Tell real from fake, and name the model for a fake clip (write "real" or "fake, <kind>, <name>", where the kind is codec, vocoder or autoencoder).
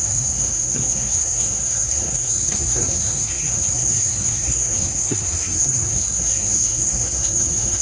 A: fake, codec, SNAC